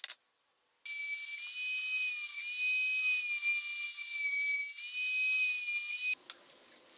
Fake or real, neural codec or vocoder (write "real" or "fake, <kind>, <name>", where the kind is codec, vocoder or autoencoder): real